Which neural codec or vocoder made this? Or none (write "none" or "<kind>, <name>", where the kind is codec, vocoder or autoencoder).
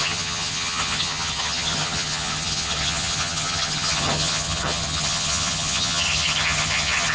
vocoder, HiFi-GAN